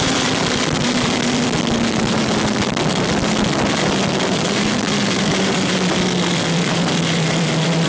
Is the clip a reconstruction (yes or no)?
yes